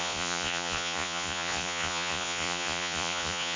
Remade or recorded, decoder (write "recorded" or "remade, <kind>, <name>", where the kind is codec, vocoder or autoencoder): remade, vocoder, Vocos